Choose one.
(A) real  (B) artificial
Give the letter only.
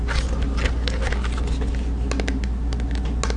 A